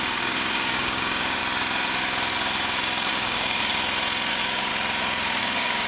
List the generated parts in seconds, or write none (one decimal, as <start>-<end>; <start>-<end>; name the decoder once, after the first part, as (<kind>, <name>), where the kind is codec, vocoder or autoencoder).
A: 0.0-1.4 (codec, DAC); 3.1-3.7; 4.3-4.7; 5.4-5.9